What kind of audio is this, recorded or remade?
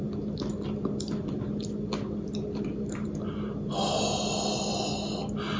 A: recorded